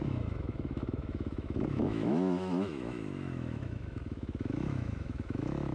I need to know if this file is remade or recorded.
remade